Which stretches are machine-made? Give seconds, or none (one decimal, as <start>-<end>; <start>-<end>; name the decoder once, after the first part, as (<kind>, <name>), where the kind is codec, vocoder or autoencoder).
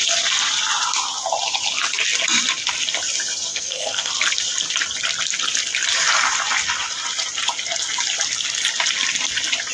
3.5-4.1 (codec, SNAC)